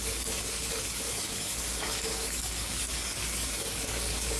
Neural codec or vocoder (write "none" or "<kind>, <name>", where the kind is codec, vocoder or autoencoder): codec, DAC